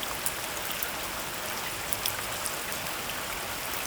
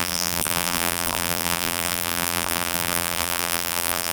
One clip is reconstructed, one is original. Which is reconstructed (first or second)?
second